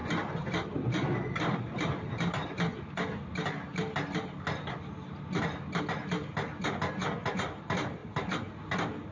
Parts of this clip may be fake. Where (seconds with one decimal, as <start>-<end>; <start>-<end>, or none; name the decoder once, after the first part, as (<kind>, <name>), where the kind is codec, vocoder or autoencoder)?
none